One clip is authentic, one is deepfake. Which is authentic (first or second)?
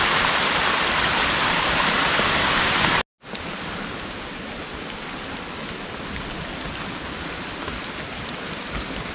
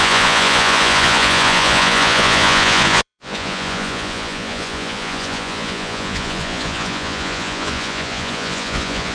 first